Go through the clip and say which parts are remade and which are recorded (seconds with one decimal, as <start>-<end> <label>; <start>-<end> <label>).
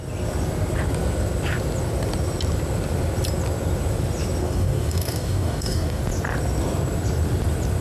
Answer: 0.0-4.4 recorded; 4.4-6.0 remade; 6.0-7.8 recorded